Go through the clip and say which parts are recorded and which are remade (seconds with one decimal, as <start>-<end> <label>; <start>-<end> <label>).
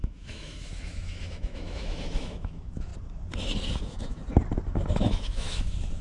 0.0-2.9 remade; 2.9-3.8 recorded; 3.8-4.2 remade; 4.2-4.9 recorded; 4.9-6.0 remade